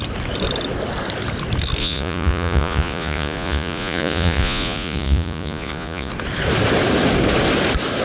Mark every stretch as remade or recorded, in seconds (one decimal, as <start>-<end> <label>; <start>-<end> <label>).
0.0-1.8 recorded; 1.8-6.1 remade; 6.1-8.0 recorded